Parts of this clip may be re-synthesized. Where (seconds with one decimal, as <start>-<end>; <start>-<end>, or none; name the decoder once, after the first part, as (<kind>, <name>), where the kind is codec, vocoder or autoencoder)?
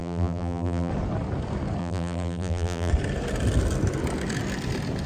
0.0-0.9 (vocoder, BigVGAN v2); 1.8-2.9